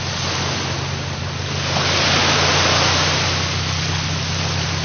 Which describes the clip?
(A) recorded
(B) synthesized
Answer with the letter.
A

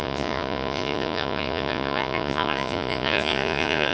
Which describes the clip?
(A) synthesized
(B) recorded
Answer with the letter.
A